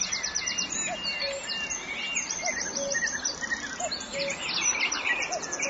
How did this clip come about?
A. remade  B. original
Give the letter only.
B